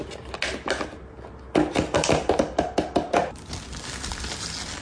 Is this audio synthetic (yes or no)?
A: no